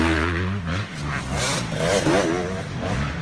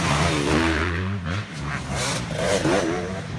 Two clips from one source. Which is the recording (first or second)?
first